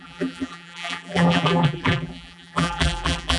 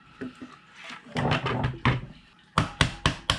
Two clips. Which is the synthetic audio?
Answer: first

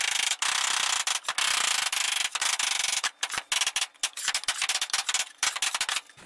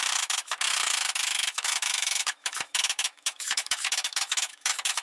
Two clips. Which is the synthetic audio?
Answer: second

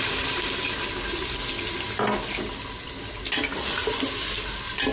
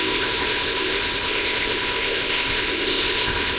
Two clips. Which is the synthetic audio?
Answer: second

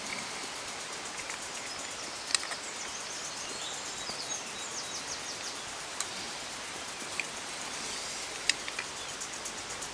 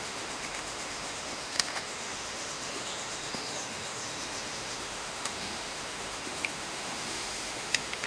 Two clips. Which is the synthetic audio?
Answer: second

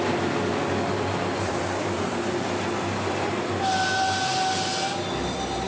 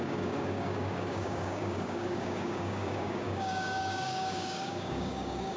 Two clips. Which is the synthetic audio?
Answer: second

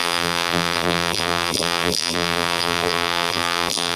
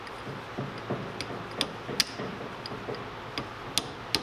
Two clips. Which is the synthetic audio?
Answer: first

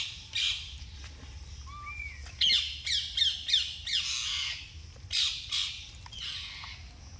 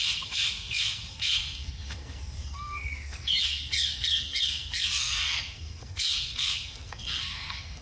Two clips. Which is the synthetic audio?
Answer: second